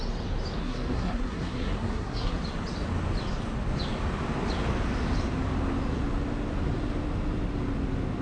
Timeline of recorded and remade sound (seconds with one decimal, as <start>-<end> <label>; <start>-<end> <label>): 0.0-0.6 recorded; 0.6-2.4 remade; 2.4-8.2 recorded